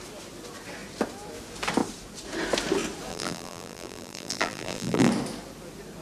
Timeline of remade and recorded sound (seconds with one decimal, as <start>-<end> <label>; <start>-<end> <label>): 0.0-3.1 recorded; 3.1-5.1 remade; 5.1-6.0 recorded